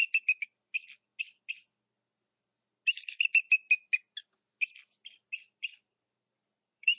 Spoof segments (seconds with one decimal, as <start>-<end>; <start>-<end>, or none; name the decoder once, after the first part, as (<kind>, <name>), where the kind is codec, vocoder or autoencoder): 5.6-7.0 (vocoder, BigVGAN v2)